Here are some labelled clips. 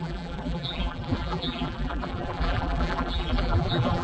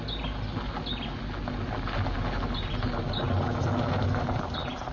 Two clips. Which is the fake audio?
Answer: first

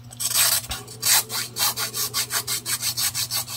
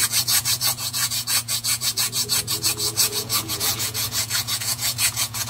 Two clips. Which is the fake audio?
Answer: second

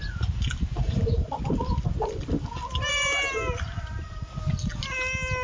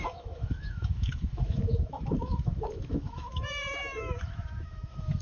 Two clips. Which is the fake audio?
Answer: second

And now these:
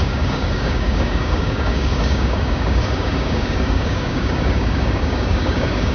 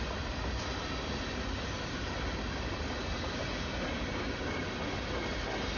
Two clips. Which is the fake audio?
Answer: first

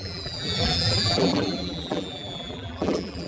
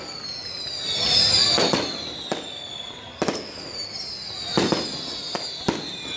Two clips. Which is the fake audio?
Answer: first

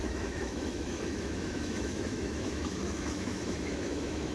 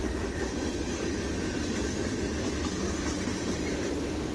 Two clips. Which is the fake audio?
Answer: first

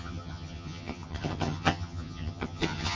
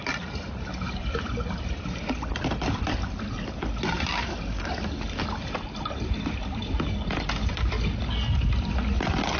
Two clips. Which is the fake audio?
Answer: first